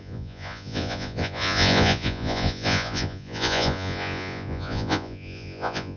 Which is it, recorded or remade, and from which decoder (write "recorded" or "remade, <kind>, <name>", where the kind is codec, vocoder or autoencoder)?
remade, vocoder, Vocos